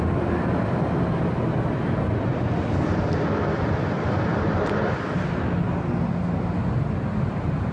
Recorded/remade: recorded